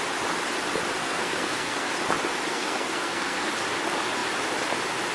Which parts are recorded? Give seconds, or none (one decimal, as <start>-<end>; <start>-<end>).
0.0-1.0; 1.9-2.5; 3.5-5.1